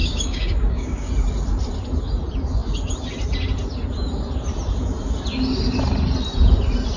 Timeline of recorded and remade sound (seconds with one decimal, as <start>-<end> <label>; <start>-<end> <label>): 0.0-1.1 remade; 1.1-7.0 recorded